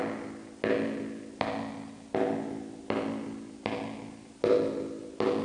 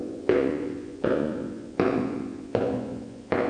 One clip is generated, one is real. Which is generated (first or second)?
second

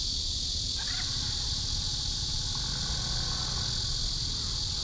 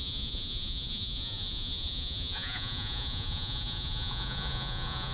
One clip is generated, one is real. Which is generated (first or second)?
second